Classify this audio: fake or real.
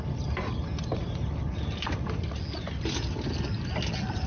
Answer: real